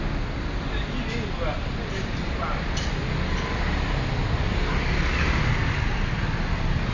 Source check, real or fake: real